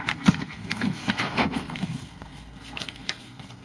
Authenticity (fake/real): fake